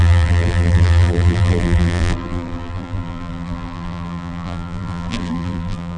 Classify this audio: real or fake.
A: fake